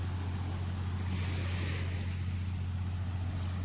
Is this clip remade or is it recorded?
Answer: recorded